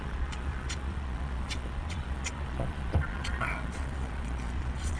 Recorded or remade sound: remade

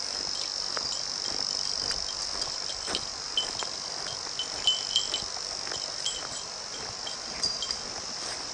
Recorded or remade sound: recorded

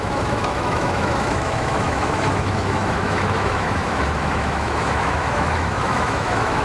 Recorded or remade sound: remade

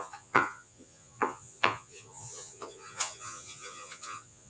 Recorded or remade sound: remade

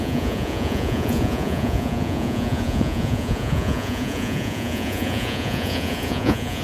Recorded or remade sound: remade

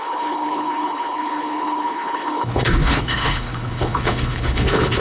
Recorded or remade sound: remade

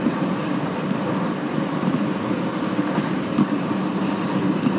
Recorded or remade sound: recorded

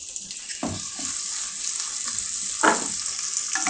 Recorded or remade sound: recorded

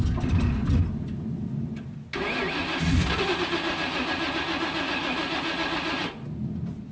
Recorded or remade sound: recorded